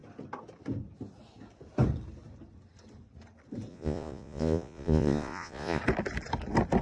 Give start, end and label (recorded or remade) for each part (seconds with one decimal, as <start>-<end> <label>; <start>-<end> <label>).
0.0-3.7 recorded; 3.7-5.8 remade; 5.8-6.8 recorded